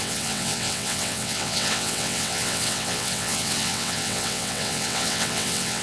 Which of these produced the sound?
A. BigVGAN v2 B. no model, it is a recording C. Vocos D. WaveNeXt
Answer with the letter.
D